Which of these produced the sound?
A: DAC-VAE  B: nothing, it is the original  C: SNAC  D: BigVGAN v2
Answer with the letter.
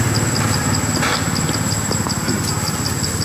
B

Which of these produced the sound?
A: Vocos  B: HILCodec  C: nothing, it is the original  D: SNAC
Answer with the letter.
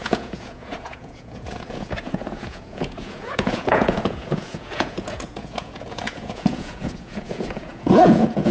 A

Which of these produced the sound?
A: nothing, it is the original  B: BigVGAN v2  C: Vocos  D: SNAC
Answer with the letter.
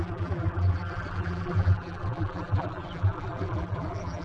B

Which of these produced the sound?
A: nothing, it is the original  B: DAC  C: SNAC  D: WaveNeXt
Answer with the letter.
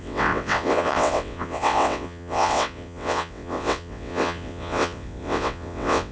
D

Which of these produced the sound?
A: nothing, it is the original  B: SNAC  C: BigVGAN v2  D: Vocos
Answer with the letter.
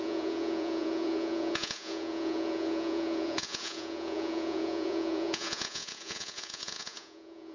D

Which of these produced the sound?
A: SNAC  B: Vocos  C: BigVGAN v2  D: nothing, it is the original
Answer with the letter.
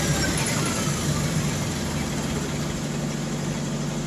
D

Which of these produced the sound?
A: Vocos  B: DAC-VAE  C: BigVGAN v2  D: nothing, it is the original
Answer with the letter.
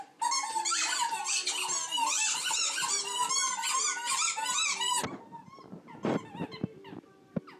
C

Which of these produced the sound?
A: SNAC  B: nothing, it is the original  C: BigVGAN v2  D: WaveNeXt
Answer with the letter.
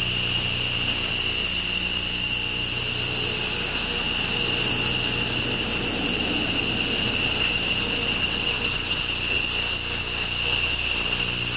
B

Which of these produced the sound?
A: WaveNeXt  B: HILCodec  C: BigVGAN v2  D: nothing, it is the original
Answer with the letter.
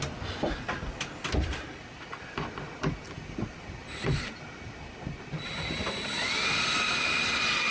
D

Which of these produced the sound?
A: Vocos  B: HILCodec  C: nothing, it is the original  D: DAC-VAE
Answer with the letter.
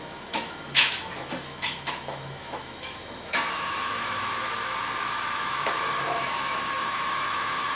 D